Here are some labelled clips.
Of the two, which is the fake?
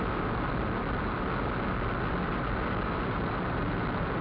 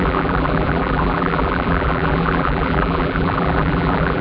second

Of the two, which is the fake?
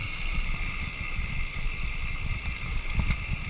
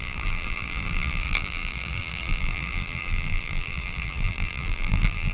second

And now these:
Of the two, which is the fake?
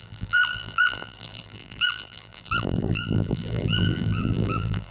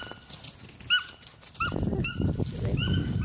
first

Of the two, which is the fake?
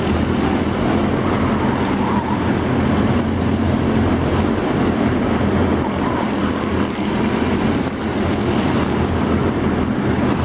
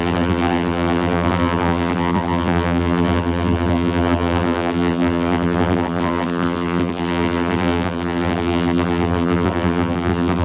second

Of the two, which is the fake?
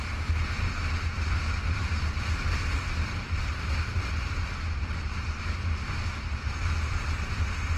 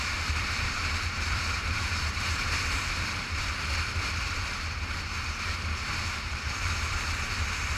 second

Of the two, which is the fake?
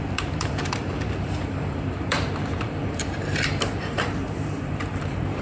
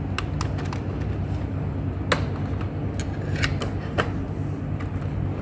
first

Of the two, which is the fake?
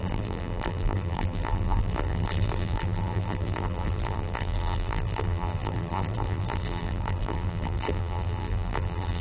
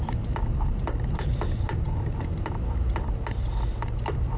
first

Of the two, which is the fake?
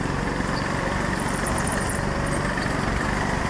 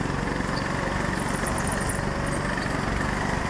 first